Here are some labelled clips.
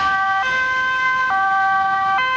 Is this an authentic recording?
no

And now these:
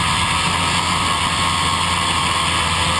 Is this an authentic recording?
yes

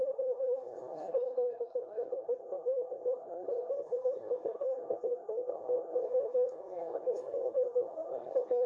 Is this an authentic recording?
no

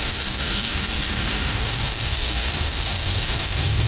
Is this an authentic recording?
no